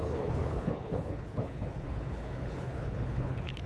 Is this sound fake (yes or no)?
yes